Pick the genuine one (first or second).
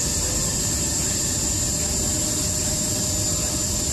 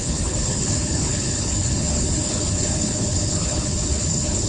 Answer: first